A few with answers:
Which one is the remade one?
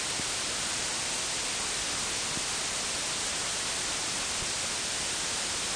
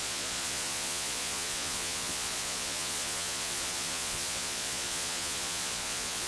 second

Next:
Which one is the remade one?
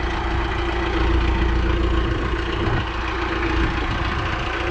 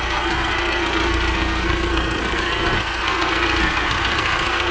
second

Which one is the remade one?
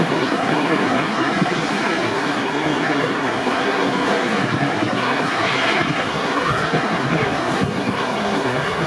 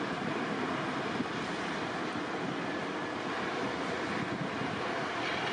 first